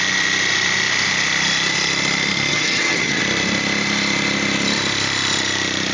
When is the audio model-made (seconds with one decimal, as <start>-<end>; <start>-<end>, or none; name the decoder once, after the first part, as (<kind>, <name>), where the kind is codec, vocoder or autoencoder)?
2.5-3.2 (vocoder, HiFi-GAN)

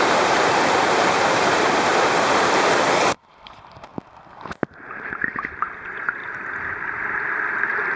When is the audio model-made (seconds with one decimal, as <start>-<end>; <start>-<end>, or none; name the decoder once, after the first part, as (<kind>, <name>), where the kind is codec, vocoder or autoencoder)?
0.0-1.9 (vocoder, BigVGAN v2); 2.7-3.9; 4.7-6.2